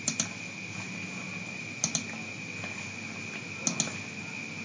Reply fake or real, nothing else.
real